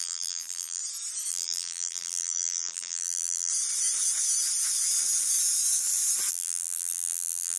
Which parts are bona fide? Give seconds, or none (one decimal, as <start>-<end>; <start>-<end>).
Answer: 0.8-1.3; 3.5-6.3